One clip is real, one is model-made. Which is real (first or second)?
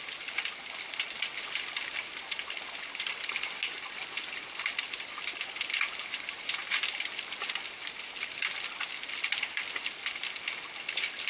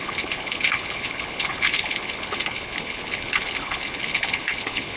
first